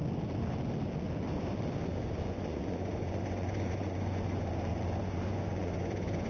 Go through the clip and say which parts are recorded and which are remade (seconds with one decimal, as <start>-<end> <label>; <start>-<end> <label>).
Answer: 0.0-2.3 recorded; 2.3-4.5 remade; 4.5-5.0 recorded; 5.0-6.3 remade